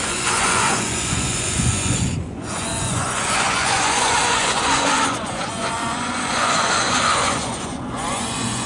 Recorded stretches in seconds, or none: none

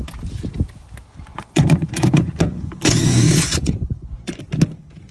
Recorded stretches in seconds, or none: 0.0-1.3; 4.4-5.1

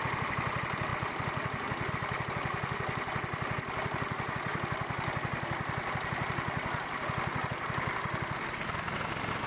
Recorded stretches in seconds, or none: 0.0-9.5

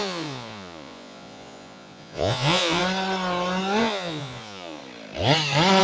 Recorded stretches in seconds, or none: 2.8-3.8; 4.8-5.8

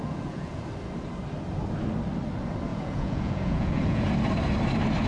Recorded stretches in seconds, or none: 0.6-2.7; 4.0-5.1

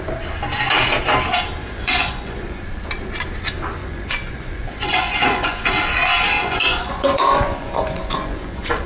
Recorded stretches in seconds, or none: 0.0-1.6; 2.6-3.8; 5.7-6.4

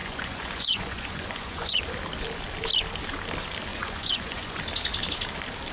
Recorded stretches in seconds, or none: 1.8-3.7; 4.6-5.7